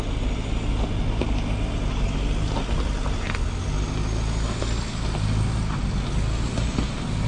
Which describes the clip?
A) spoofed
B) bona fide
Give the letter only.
B